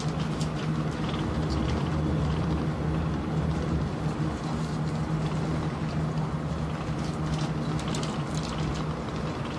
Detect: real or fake real